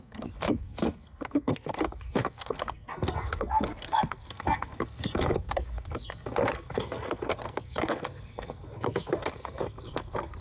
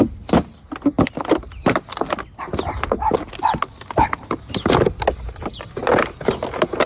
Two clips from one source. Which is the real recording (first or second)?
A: second